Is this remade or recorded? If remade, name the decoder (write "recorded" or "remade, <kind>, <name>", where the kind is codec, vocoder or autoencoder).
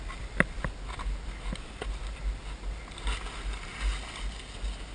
recorded